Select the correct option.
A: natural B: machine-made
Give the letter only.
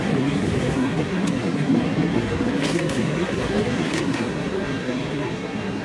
B